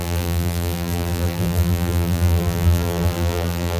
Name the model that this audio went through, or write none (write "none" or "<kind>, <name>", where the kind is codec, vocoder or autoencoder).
vocoder, BigVGAN v2